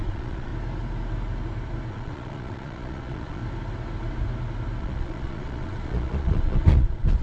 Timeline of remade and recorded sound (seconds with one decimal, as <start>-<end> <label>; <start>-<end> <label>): 0.0-0.5 remade; 0.5-1.9 recorded; 1.9-3.4 remade; 3.4-4.8 recorded; 4.8-7.2 remade